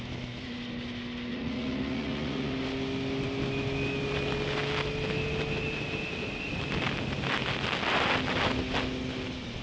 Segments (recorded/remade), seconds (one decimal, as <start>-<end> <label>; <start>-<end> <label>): 0.0-1.3 recorded; 1.3-2.5 remade; 2.5-9.6 recorded